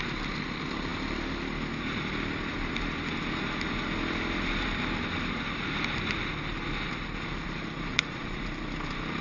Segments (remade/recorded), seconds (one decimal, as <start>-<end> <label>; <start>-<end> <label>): 0.0-7.9 recorded; 7.9-8.4 remade; 8.4-9.2 recorded